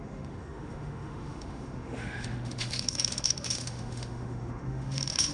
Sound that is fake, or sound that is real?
fake